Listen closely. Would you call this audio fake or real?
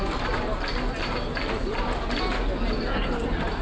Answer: real